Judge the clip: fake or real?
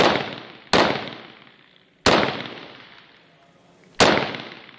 real